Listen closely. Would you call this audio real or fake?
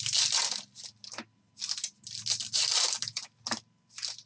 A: real